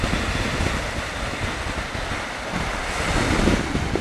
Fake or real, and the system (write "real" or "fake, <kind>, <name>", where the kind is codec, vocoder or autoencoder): real